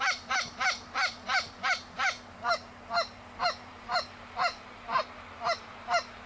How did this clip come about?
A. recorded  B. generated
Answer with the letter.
B